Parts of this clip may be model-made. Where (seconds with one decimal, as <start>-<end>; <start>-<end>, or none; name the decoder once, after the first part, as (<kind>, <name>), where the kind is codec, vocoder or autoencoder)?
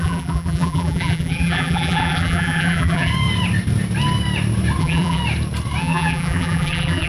0.0-3.1 (vocoder, BigVGAN v2); 4.8-5.2; 5.8-7.1